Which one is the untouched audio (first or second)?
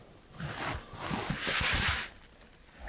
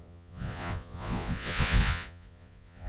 first